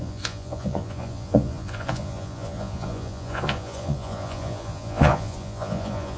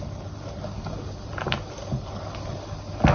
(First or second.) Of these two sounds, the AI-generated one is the first